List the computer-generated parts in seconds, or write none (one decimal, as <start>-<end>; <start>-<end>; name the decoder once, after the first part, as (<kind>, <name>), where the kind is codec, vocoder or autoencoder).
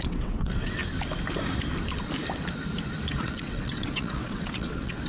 0.0-0.8 (vocoder, WaveNeXt); 3.1-5.1